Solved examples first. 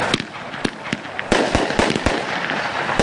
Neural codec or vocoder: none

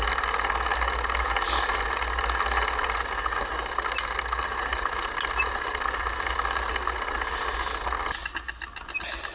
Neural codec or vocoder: none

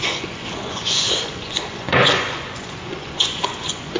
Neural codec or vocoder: vocoder, Vocos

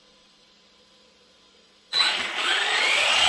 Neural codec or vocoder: vocoder, Vocos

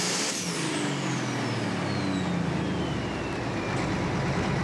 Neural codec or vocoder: none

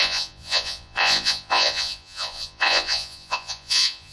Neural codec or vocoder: vocoder, Vocos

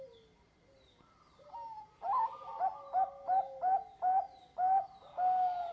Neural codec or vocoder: none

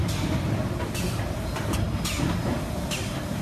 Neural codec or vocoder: none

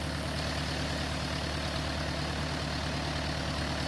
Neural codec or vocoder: none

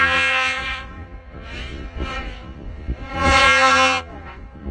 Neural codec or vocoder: vocoder, Vocos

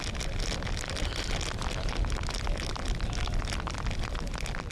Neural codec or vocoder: none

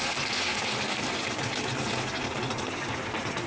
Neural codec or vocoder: none